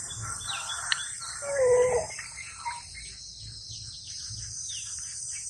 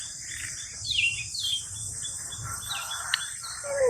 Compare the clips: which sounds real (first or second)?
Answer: first